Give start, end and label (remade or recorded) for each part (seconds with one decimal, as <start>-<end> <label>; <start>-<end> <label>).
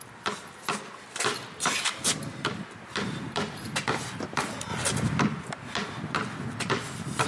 0.0-7.3 recorded